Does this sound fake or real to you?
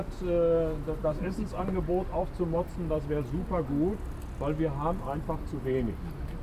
real